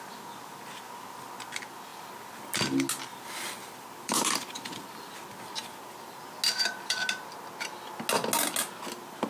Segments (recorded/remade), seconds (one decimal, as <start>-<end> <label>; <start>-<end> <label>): 0.0-1.9 recorded; 1.9-2.5 remade; 2.5-3.1 recorded; 3.1-5.1 remade; 5.1-5.6 recorded; 5.6-6.2 remade; 6.2-9.3 recorded